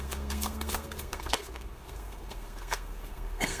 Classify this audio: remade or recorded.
remade